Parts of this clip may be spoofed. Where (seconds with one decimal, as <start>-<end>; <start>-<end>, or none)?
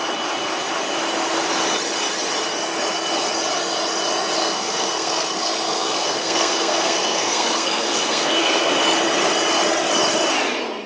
4.4-8.7